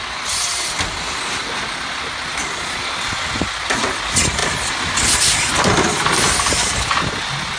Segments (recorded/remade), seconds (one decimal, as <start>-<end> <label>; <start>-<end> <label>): 0.0-1.4 recorded; 1.4-1.9 remade; 1.9-2.3 recorded; 2.3-3.0 remade; 3.0-7.6 recorded